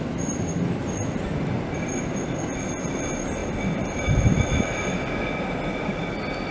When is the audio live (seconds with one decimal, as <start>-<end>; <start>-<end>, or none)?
0.0-6.5